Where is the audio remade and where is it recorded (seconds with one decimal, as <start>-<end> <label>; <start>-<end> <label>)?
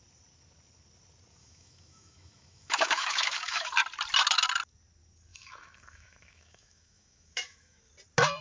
0.0-1.4 recorded; 1.4-3.7 remade; 3.7-5.3 recorded; 5.3-7.9 remade; 7.9-8.4 recorded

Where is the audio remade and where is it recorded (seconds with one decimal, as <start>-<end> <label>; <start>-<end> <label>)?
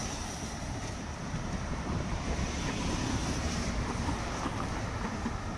0.0-2.6 remade; 2.6-3.2 recorded; 3.2-4.0 remade; 4.0-5.6 recorded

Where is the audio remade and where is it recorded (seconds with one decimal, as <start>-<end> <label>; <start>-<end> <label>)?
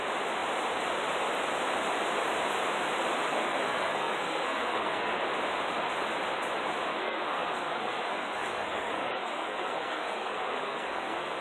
0.0-3.3 recorded; 3.3-5.2 remade; 5.2-6.9 recorded; 6.9-11.4 remade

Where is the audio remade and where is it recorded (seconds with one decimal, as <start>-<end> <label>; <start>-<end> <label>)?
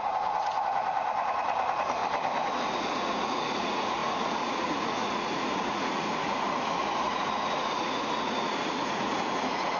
0.0-2.0 remade; 2.0-2.5 recorded; 2.5-9.8 remade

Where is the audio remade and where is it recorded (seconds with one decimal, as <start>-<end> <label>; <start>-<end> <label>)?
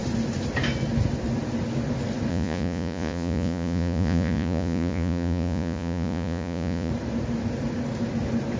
0.0-2.3 recorded; 2.3-6.9 remade; 6.9-8.6 recorded